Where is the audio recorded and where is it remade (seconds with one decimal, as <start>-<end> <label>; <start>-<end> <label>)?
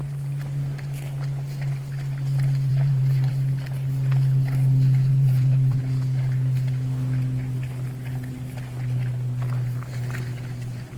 0.0-2.7 recorded; 2.7-3.3 remade; 3.3-5.1 recorded; 5.1-5.8 remade; 5.8-11.0 recorded